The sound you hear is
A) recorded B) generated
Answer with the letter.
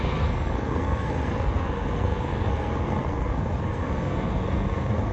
B